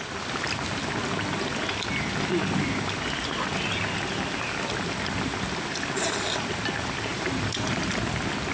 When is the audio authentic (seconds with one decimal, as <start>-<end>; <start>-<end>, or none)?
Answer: 0.0-7.1; 8.0-8.5